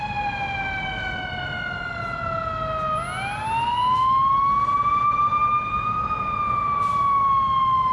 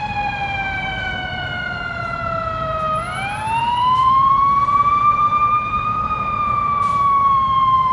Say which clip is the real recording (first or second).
first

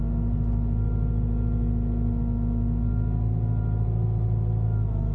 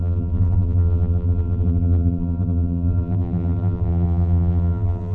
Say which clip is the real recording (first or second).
first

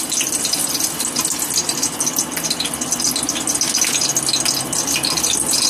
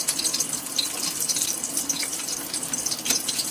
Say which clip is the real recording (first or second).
first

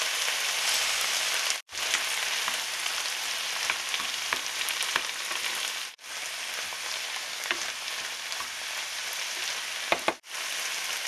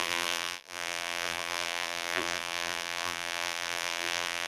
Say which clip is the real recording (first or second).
first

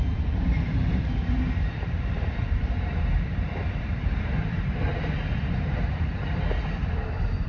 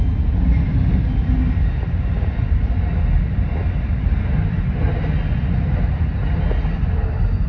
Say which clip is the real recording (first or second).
second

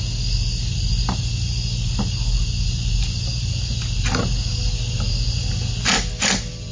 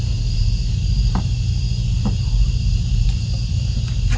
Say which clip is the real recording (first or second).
first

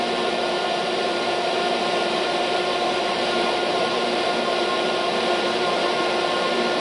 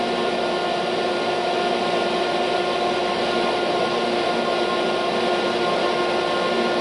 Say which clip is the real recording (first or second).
second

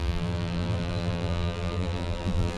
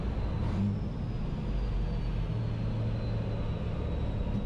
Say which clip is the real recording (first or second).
second